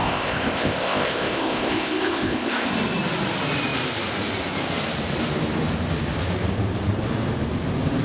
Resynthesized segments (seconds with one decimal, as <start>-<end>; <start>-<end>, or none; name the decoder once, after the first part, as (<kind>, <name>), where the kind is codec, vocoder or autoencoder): 0.0-2.7 (codec, ZipCodec)